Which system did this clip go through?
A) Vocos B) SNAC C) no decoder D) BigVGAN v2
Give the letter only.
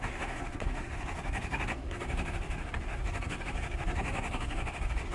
B